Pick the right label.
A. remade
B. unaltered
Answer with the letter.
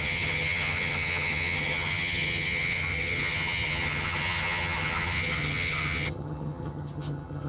A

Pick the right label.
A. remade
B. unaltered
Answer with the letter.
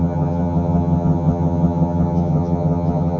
A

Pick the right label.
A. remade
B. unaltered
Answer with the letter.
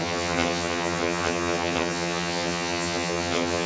A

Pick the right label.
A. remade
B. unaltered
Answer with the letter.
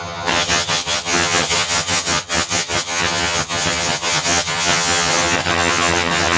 A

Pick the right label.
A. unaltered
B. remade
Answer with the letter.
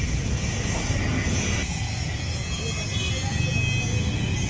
A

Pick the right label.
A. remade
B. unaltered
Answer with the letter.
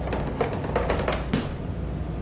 B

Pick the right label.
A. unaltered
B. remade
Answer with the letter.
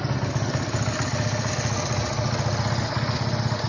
A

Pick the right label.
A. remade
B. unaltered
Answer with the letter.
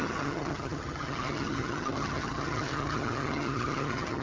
A